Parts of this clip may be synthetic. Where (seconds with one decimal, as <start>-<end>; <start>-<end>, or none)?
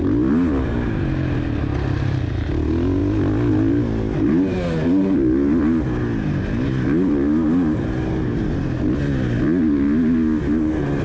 none